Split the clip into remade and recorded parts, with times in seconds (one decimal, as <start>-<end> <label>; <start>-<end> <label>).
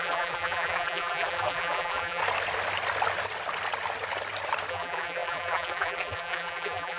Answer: 0.0-2.2 remade; 2.2-4.7 recorded; 4.7-7.0 remade